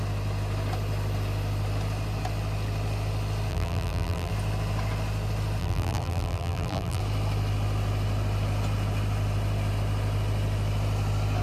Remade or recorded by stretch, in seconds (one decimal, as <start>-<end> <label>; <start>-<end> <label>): 0.0-3.5 recorded; 3.5-4.3 remade; 4.3-5.6 recorded; 5.6-7.0 remade; 7.0-11.4 recorded